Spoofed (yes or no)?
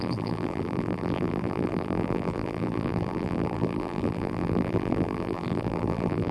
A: yes